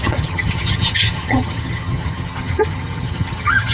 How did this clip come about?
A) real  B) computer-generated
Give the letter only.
B